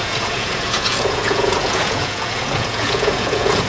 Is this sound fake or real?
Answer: fake